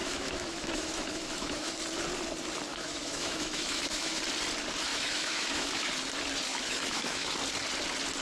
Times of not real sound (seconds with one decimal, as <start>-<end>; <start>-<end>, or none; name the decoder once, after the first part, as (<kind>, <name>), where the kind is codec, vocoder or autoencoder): 0.0-1.8 (autoencoder, DAC-VAE); 2.7-4.2; 4.9-5.9; 6.5-7.3

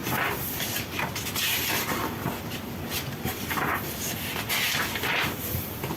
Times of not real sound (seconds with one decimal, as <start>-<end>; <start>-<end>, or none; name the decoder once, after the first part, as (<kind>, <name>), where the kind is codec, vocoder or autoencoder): none